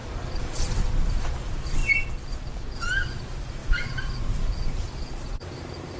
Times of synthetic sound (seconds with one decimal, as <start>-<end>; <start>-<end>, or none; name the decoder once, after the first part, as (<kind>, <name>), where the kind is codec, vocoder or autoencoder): 0.0-0.8 (vocoder, BigVGAN v2); 3.6-6.0